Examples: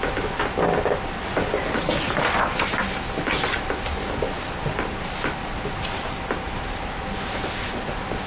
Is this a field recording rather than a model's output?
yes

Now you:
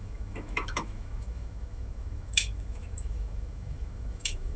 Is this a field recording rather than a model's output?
no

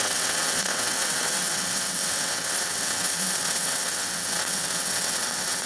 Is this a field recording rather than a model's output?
no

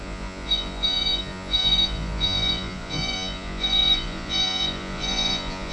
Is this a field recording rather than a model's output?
no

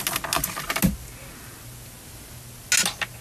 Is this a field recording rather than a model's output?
yes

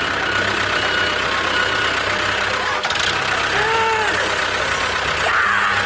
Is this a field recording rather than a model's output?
yes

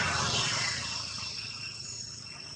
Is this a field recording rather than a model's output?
yes